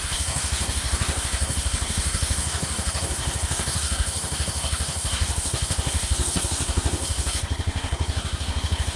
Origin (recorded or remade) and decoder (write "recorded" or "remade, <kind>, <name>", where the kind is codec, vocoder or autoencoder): remade, codec, SNAC